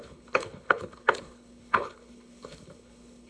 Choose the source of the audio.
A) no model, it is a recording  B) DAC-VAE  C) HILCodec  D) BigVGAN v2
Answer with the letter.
C